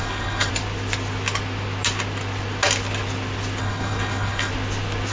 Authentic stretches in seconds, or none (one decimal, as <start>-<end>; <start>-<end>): 0.5-3.6; 4.5-5.1